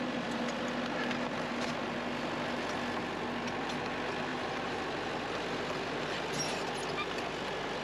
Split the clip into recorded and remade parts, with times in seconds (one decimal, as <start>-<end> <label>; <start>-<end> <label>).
0.0-4.3 recorded; 4.3-4.8 remade; 4.8-7.8 recorded